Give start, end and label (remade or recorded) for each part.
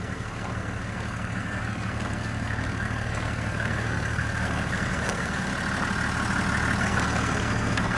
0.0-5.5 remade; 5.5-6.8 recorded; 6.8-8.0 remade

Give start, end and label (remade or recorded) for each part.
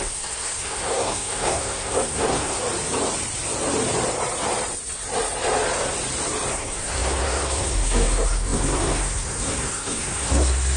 0.0-2.6 remade; 2.6-6.5 recorded; 6.5-10.8 remade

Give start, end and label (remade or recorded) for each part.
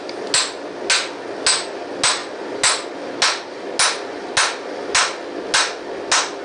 0.0-6.4 recorded